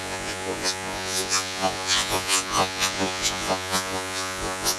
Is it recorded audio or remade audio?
remade